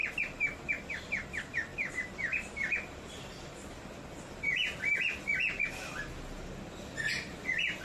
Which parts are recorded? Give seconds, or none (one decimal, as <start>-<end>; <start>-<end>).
0.0-1.7; 2.6-7.8

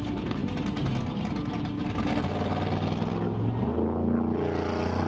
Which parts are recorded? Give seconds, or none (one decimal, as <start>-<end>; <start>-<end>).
0.0-5.1

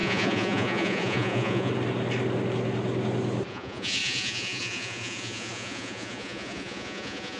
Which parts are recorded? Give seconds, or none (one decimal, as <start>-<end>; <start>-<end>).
1.7-3.5

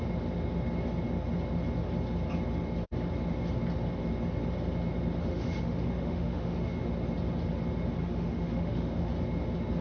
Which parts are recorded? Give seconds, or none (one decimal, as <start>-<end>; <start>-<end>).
0.0-5.2; 6.9-8.0; 9.1-9.8